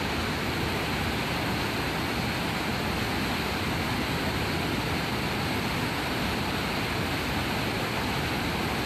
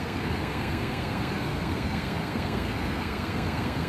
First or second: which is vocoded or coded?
second